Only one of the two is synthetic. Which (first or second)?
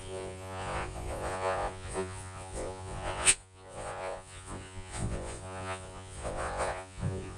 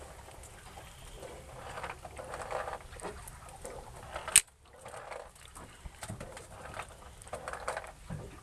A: first